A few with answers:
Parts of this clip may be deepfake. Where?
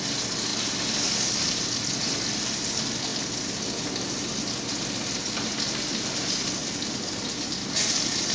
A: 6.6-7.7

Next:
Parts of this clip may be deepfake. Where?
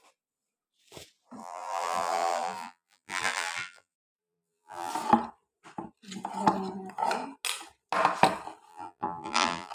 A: 1.4-4.9; 8.7-9.7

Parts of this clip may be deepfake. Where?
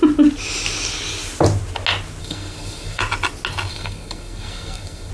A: 2.2-3.0; 3.7-5.1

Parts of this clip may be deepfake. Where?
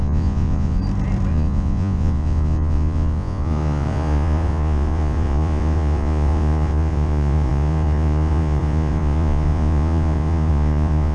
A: 0.0-0.8; 1.3-11.1